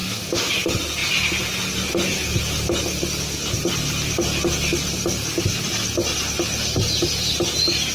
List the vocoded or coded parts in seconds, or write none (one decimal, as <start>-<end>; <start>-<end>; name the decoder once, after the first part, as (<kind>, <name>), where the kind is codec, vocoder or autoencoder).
0.0-0.5 (autoencoder, DAC-VAE)

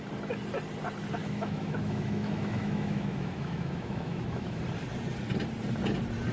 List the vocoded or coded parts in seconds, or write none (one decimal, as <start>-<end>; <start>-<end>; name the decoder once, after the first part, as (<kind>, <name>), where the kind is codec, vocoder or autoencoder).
1.2-4.6 (autoencoder, DAC-VAE)

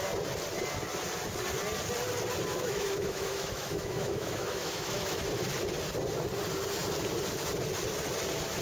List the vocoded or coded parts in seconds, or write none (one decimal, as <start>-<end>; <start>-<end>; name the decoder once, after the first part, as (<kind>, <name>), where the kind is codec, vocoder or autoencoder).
2.5-5.2 (autoencoder, DAC-VAE)